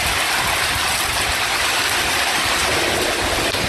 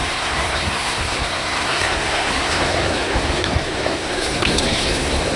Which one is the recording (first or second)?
first